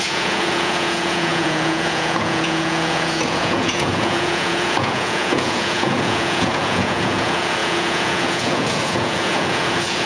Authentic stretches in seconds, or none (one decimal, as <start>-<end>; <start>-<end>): none